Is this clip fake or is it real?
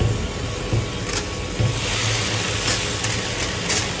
real